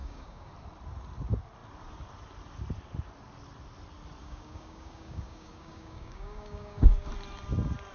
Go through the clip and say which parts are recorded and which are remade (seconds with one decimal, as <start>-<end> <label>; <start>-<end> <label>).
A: 0.0-0.5 remade; 0.5-4.2 recorded; 4.2-7.1 remade; 7.1-7.9 recorded